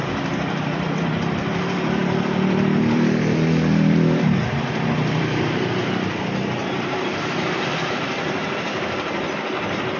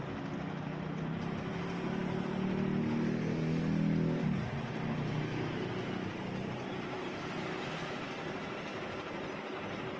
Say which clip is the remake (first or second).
first